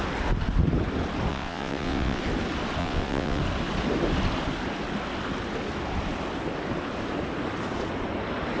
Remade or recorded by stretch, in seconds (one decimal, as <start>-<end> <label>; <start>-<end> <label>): 0.0-1.3 recorded; 1.3-2.2 remade; 2.2-2.8 recorded; 2.8-3.4 remade; 3.4-8.6 recorded